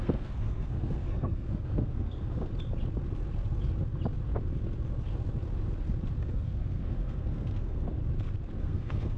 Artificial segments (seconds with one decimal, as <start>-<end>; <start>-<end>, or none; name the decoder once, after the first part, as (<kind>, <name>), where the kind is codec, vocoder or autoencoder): 0.0-2.5 (codec, SNAC); 6.2-8.0; 8.6-9.2